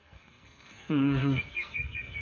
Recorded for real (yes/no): no